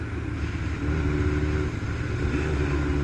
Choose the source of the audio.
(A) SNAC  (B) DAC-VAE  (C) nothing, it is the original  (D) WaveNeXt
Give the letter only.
C